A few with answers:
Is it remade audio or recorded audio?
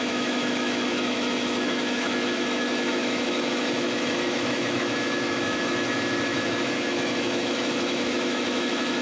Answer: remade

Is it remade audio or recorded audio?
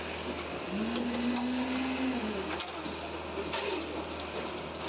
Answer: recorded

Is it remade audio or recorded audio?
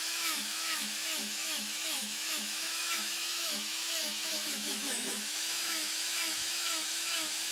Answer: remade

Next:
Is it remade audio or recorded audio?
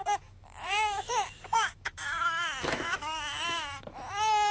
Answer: remade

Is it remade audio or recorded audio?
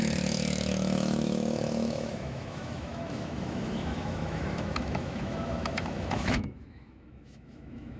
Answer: remade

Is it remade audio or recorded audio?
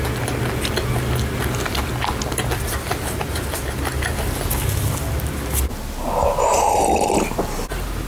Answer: recorded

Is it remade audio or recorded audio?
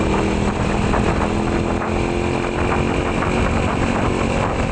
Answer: recorded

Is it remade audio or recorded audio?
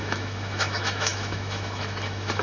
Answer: remade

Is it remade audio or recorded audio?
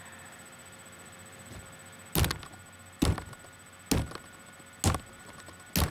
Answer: recorded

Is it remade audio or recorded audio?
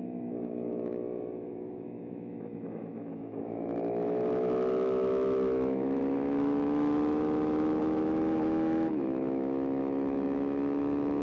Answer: remade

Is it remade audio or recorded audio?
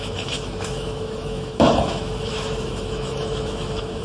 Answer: remade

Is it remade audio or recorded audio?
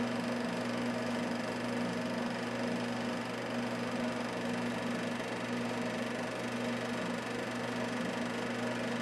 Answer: recorded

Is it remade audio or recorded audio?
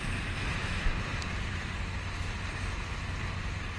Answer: recorded